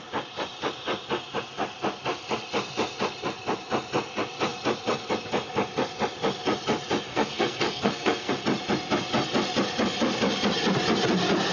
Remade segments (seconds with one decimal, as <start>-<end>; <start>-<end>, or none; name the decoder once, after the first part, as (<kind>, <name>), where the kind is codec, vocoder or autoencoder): 7.1-8.3 (codec, SNAC)